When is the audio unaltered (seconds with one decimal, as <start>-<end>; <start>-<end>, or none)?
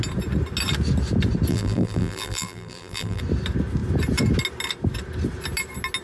0.0-1.5; 3.2-6.0